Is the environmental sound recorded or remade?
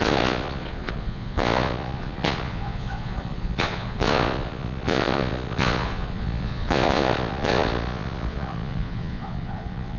remade